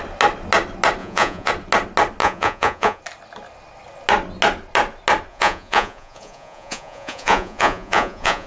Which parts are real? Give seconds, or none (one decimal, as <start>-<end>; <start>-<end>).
0.0-1.0; 1.5-2.2; 3.0-5.3